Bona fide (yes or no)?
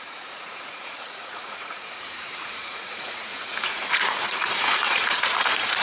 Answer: no